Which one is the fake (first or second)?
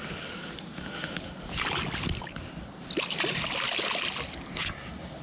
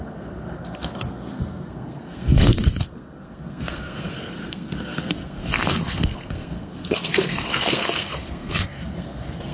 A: second